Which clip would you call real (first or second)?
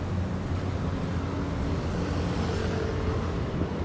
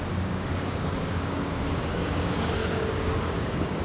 first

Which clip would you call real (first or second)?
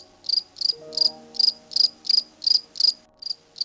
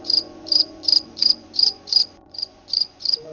first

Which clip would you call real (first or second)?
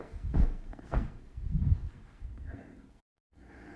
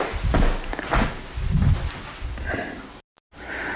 second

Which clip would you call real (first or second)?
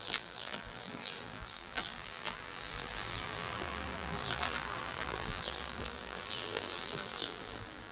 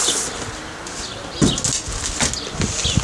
second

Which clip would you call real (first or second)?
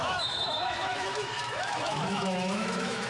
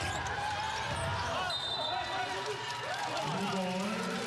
second